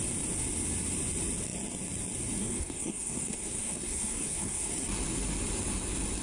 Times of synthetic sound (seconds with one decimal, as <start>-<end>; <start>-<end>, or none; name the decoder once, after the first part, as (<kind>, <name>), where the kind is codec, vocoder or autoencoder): 2.4-4.7 (codec, SNAC)

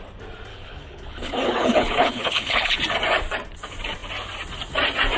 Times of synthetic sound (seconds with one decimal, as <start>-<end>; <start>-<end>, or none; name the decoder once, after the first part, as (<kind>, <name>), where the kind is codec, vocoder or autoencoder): 0.5-2.8 (codec, HILCodec)

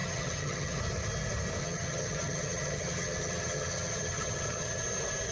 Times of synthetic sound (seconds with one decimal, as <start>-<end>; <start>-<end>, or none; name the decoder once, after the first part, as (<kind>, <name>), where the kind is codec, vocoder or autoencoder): 0.0-0.8 (vocoder, HiFi-GAN); 1.6-4.8